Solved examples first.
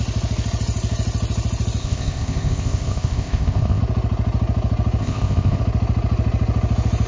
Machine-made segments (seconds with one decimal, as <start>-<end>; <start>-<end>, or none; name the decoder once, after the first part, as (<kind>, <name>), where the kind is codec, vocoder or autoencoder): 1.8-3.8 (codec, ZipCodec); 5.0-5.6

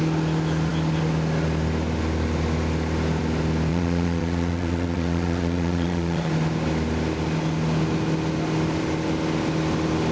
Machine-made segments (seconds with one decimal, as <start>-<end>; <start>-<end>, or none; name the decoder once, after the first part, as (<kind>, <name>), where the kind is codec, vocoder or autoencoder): 3.7-6.3 (vocoder, Vocos)

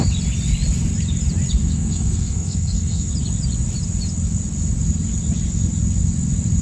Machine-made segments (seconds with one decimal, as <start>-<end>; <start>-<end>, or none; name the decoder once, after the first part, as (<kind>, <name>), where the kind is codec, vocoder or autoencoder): 1.6-3.1 (codec, SNAC)